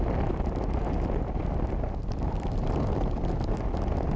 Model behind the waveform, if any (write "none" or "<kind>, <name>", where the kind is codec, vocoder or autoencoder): none